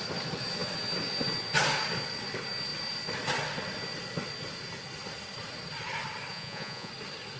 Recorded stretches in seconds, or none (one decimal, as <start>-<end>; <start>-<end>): 0.0-6.3; 6.9-7.4